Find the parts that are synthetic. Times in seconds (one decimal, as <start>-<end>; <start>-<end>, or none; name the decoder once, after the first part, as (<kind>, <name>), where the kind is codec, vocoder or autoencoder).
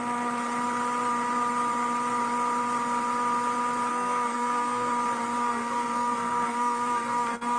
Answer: 3.9-4.9 (codec, SNAC); 5.4-7.6